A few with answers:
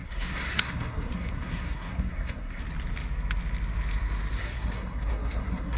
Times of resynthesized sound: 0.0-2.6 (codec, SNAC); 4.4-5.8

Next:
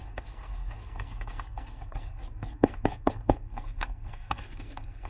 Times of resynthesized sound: 0.0-5.1 (codec, SNAC)

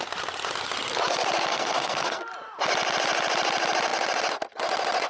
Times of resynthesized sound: 1.5-2.2 (codec, SNAC)

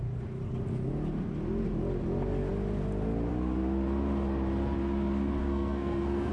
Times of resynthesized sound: 5.4-6.3 (codec, SNAC)

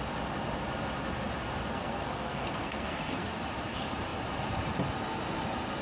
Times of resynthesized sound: 1.7-3.3 (codec, SNAC)

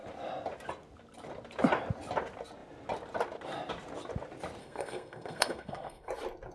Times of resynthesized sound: 4.6-6.1 (codec, SNAC)

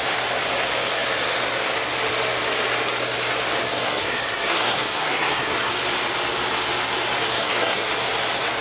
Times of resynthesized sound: 3.6-5.7 (codec, SNAC); 7.3-7.9

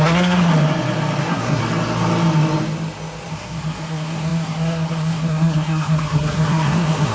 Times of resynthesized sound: 0.0-0.5 (codec, SNAC); 1.2-1.6; 3.3-7.1